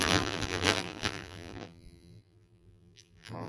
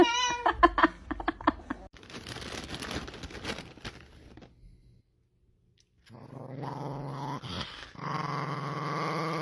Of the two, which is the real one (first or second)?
second